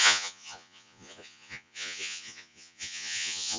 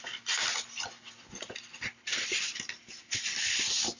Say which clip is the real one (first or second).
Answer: second